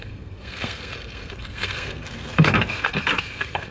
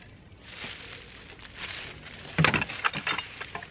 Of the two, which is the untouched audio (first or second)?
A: second